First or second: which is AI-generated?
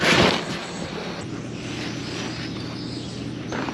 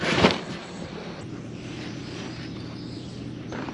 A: second